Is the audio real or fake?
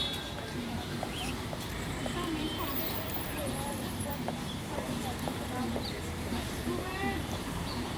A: fake